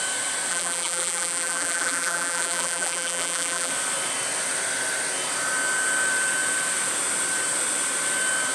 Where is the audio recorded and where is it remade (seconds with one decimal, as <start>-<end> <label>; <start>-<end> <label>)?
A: 0.0-0.5 recorded; 0.5-3.7 remade; 3.7-8.5 recorded